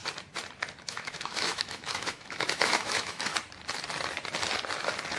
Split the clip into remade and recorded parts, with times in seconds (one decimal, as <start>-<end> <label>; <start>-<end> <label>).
0.0-0.8 recorded; 0.8-3.3 remade; 3.3-5.2 recorded